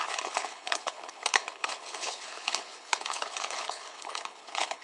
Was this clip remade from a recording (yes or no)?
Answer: yes